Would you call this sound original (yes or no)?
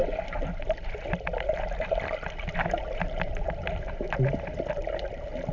yes